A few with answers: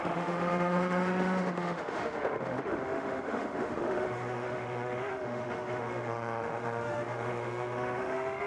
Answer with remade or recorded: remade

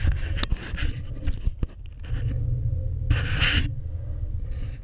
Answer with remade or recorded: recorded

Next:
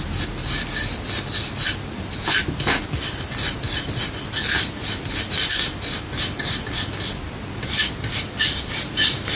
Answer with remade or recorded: recorded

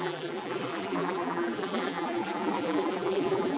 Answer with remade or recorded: remade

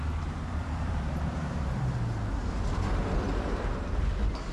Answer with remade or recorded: remade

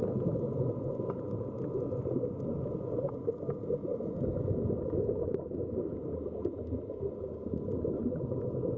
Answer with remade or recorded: recorded